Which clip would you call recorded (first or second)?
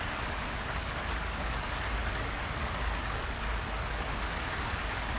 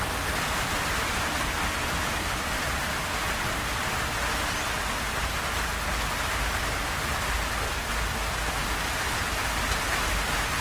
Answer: second